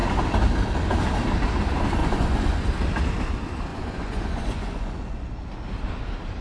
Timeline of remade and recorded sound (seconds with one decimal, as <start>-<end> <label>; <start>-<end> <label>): 0.0-2.0 recorded; 2.0-2.7 remade; 2.7-3.7 recorded; 3.7-5.3 remade; 5.3-6.4 recorded